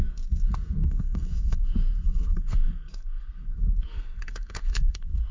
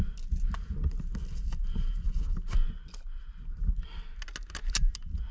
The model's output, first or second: first